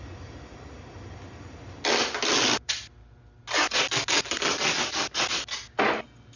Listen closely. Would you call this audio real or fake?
real